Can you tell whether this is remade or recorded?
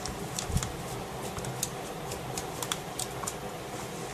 recorded